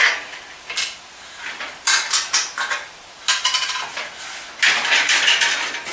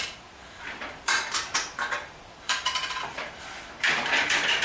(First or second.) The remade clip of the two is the second